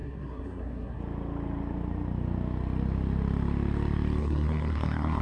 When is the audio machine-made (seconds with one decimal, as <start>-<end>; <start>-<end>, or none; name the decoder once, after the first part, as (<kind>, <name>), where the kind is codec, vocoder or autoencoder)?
0.0-1.0 (codec, SNAC); 4.2-5.2